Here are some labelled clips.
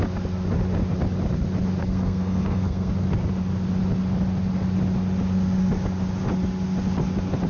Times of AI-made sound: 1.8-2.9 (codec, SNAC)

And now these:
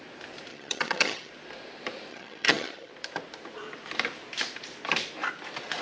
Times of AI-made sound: 0.5-1.3 (vocoder, HiFi-GAN); 2.1-2.9